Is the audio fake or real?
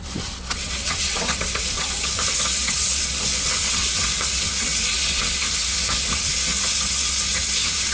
fake